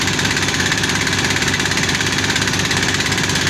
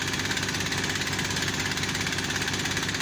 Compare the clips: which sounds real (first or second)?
second